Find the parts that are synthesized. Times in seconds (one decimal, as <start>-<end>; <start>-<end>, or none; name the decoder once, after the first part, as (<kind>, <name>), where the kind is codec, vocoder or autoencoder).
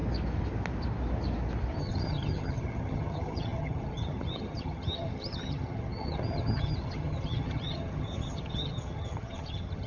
1.8-9.9 (vocoder, HiFi-GAN)